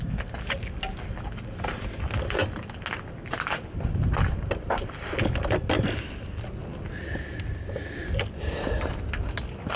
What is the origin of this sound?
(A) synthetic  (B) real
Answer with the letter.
B